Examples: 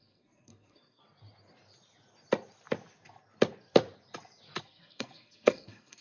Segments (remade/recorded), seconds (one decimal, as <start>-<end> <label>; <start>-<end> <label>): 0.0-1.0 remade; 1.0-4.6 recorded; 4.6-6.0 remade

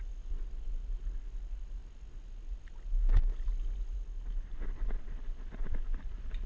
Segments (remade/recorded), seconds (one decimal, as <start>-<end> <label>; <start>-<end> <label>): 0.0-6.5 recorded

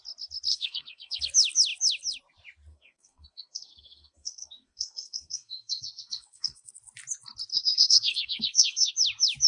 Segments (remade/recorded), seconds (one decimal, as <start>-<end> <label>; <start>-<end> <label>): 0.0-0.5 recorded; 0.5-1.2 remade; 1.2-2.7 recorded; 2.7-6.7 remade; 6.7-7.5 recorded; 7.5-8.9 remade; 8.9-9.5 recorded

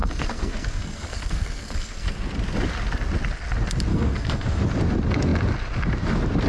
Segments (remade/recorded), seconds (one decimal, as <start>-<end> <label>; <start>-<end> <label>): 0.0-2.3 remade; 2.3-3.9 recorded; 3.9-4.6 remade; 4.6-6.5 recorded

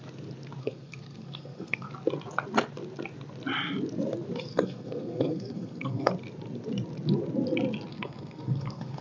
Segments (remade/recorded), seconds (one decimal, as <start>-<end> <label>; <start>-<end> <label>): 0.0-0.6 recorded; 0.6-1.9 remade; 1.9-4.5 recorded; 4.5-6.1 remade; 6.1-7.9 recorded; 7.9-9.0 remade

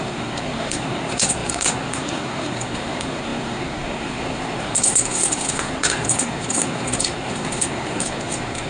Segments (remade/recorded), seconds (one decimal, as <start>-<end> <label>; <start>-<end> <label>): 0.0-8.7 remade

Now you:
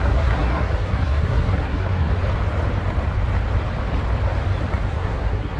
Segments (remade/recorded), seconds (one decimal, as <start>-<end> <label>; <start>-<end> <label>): 0.0-2.1 remade; 2.1-4.9 recorded; 4.9-5.6 remade

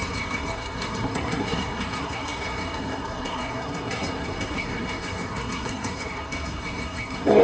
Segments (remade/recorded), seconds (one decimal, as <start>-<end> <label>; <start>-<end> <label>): 0.0-7.4 remade